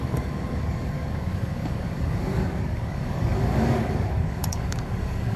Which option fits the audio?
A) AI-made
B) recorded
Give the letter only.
A